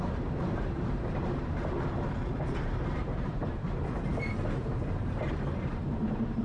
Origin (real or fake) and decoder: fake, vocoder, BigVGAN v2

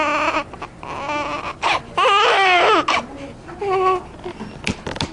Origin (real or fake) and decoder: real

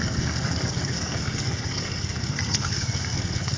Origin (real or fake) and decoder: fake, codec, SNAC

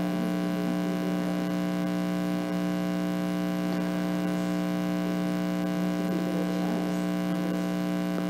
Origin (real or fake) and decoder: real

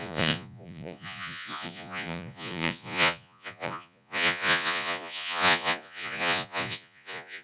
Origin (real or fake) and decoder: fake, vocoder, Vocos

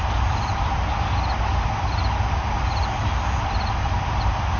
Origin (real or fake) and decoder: real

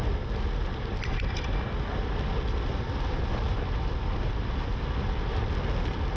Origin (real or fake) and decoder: real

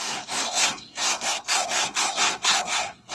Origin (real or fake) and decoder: fake, codec, SNAC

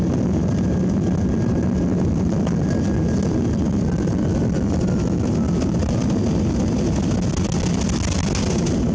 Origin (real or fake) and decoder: real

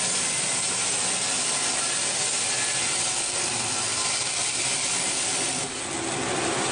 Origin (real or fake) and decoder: real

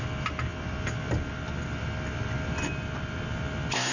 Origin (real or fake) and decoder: real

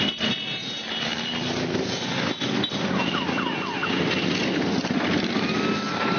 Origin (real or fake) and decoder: real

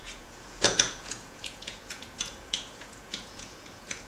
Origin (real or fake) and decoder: fake, vocoder, Vocos